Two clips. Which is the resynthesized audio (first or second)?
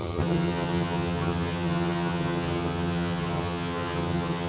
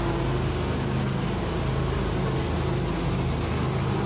first